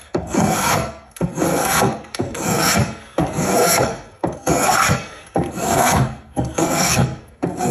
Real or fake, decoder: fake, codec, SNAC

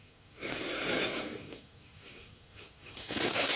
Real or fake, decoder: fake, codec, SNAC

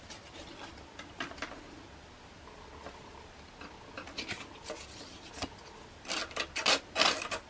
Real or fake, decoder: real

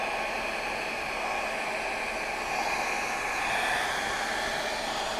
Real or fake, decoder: real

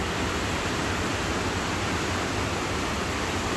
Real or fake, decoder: real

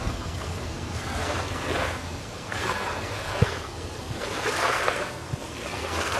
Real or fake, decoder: fake, codec, SNAC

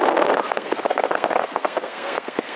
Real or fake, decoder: fake, codec, SNAC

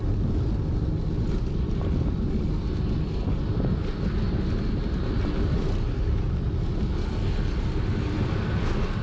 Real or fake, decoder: real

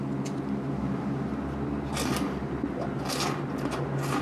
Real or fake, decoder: real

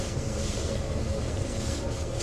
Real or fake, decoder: fake, codec, SNAC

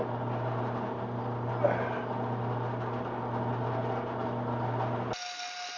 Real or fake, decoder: real